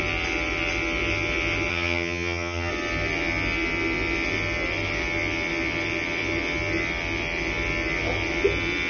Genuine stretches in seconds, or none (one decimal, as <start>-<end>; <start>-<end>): 0.0-1.7; 2.7-8.9